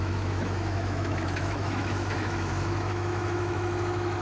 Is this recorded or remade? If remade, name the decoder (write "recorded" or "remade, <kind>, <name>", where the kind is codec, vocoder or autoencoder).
remade, autoencoder, DAC-VAE